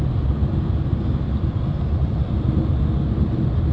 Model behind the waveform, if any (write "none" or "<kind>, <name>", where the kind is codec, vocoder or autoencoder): none